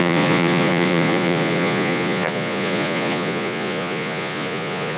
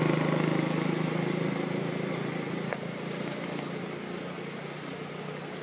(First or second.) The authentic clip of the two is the second